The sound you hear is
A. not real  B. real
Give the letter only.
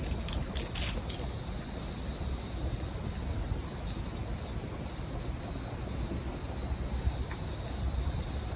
B